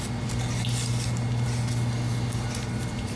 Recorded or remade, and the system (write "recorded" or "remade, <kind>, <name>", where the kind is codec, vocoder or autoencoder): recorded